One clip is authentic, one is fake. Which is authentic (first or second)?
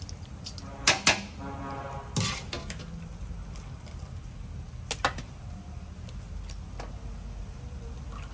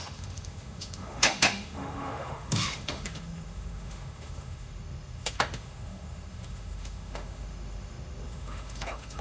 first